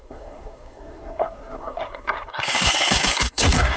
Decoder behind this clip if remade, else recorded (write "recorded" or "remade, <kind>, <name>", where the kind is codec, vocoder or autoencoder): remade, codec, SNAC